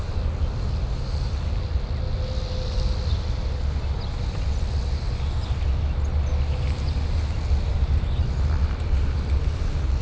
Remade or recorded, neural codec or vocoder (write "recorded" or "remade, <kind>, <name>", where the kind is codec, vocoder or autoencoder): recorded